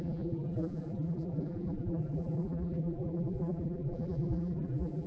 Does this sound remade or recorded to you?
remade